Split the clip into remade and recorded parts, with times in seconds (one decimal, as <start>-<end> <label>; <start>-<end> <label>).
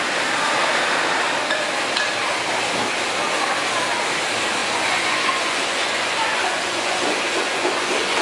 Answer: 0.0-4.6 recorded; 4.6-8.2 remade